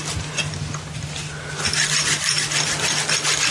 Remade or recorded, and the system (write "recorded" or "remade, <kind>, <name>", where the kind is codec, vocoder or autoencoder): recorded